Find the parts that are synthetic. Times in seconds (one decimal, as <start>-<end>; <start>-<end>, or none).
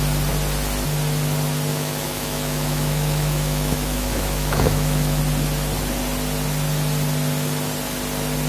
1.7-5.2